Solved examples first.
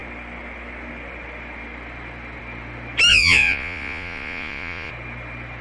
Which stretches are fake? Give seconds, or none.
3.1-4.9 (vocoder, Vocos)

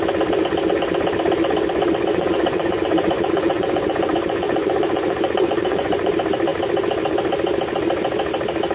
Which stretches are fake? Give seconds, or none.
2.1-6.1 (vocoder, Vocos)

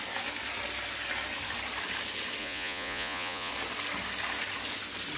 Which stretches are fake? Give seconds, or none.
2.4-3.5 (vocoder, Vocos)

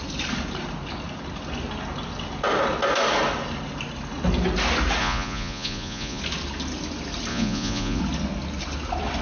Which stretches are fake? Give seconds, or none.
5.0-6.2 (vocoder, Vocos); 7.3-8.0

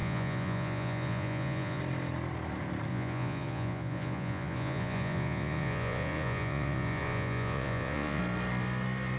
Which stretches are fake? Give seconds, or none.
0.0-1.8 (vocoder, Vocos); 2.9-8.2

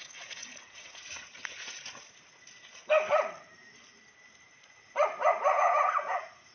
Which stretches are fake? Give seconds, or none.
0.0-2.4 (vocoder, Vocos); 4.6-6.5

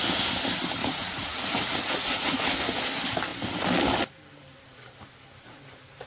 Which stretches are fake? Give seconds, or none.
0.8-2.6 (vocoder, Vocos)

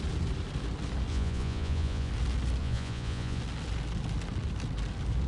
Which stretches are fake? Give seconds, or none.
1.1-2.1 (vocoder, Vocos); 2.6-3.4